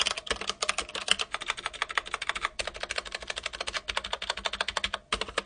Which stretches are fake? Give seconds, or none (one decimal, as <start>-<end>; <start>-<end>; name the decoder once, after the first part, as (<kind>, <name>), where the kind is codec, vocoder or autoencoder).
none